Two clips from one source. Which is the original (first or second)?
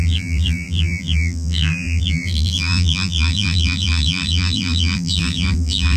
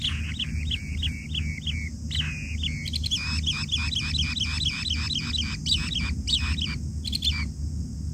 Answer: second